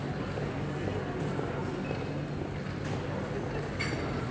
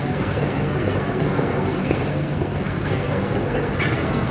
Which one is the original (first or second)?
first